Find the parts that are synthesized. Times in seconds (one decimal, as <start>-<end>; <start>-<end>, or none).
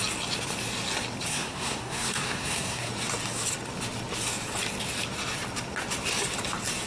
1.3-2.9